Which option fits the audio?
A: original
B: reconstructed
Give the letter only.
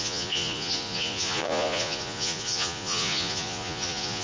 B